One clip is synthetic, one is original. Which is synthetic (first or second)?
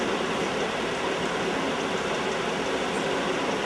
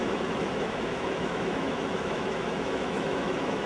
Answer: second